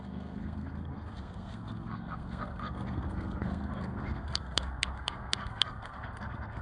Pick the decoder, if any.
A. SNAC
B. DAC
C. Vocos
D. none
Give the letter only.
A